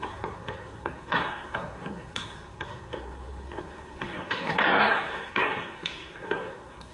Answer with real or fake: fake